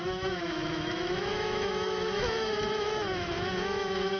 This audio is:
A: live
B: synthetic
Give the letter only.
B